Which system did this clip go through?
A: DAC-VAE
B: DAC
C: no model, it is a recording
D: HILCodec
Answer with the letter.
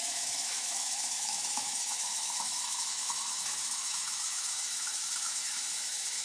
A